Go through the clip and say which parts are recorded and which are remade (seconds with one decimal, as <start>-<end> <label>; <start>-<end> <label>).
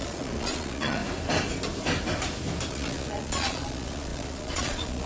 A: 0.0-1.0 remade; 1.0-2.7 recorded; 2.7-5.1 remade